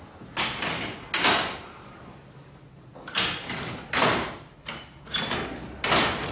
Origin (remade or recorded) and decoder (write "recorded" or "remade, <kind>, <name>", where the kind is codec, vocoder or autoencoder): recorded